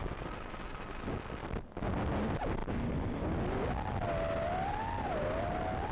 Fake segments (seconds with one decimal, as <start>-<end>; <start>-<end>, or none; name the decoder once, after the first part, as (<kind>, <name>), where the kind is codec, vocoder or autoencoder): none